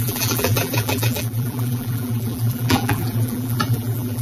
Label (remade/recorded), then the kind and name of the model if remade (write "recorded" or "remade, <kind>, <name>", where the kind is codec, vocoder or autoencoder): remade, vocoder, BigVGAN v2